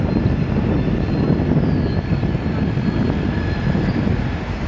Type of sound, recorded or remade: recorded